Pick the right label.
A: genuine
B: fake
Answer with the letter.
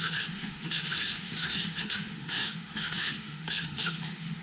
B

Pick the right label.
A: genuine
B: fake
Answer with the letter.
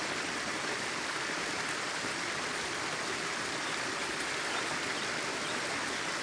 A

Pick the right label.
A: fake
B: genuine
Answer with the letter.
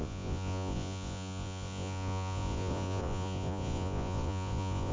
A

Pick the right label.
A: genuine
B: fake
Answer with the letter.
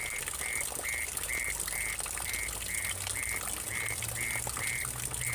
A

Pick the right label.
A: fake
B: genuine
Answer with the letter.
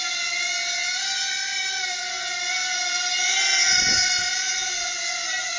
B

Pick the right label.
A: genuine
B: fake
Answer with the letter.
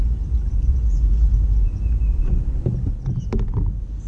A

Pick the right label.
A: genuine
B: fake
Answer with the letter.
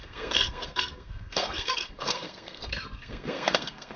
B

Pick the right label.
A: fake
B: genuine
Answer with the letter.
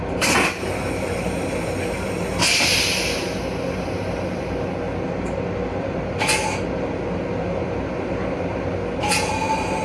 B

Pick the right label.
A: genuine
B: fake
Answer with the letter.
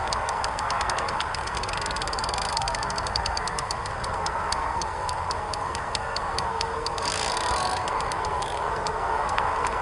B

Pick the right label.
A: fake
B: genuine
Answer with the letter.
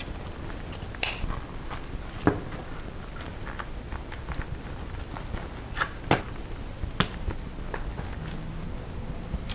B